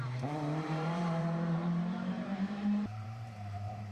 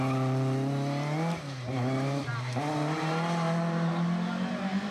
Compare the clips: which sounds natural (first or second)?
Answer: second